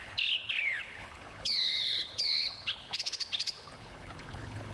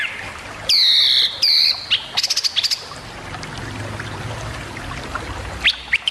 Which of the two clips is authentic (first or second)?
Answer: second